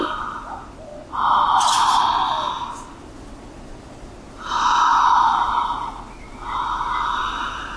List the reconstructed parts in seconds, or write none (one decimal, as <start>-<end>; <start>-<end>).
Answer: 0.0-0.9; 1.7-2.2; 3.0-7.8

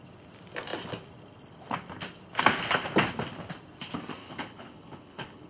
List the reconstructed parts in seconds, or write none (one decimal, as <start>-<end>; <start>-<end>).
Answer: 4.2-5.5

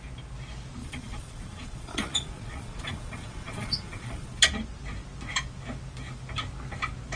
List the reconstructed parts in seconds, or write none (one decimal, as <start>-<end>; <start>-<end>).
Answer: 0.8-4.4

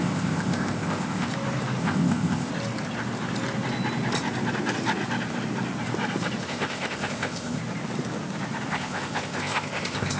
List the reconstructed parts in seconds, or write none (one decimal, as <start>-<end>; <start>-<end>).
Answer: 0.0-1.3; 1.8-2.5; 6.4-7.6; 8.7-10.2

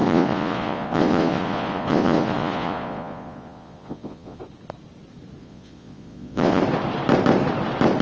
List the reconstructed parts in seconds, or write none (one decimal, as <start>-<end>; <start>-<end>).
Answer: 0.0-4.4; 5.4-6.6